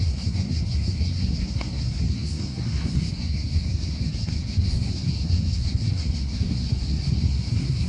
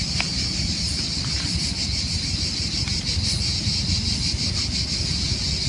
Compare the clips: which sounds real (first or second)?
second